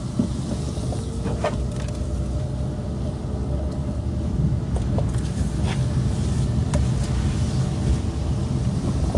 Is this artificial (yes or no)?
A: no